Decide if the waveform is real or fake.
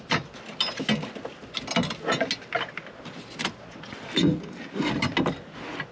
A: real